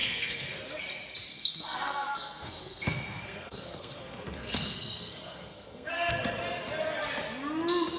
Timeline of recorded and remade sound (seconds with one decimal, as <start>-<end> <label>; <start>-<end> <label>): 0.0-0.8 remade; 0.8-1.3 recorded; 1.3-6.1 remade; 6.1-8.0 recorded